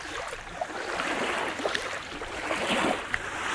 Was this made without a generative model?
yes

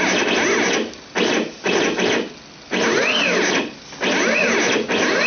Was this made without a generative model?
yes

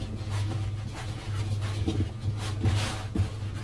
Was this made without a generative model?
yes